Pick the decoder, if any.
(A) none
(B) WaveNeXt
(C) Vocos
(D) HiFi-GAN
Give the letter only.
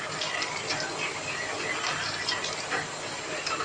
A